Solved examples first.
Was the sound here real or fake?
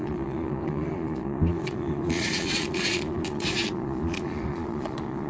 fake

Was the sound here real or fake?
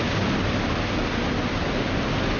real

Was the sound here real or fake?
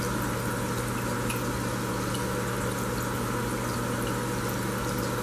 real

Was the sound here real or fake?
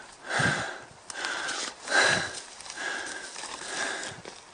real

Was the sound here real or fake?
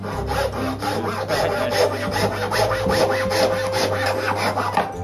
real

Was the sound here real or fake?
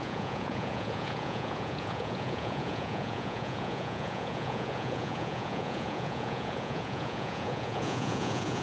fake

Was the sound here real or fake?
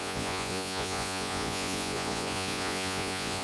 fake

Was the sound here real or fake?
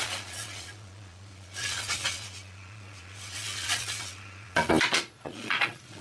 fake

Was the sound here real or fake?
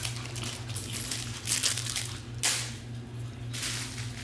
real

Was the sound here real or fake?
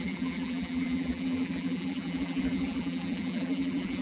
fake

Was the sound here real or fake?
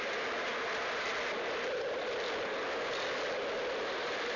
real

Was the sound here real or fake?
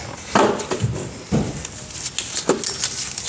real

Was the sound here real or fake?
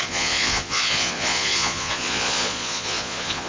fake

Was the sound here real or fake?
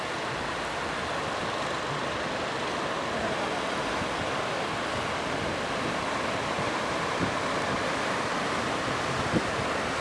fake